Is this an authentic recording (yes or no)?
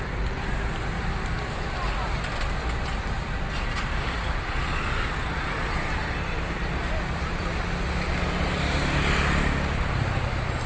yes